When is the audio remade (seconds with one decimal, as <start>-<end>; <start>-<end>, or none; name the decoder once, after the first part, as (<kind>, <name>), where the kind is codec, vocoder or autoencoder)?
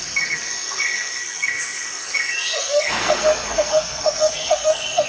0.0-5.1 (codec, SNAC)